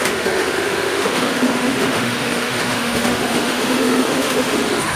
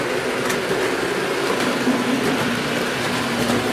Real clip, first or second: second